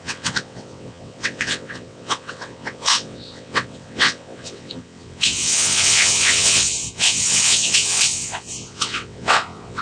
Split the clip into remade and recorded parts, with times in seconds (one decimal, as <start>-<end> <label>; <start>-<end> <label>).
0.0-9.8 remade